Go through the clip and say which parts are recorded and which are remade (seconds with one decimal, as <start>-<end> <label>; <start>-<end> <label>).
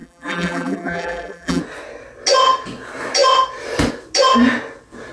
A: 0.0-1.6 remade; 1.6-5.1 recorded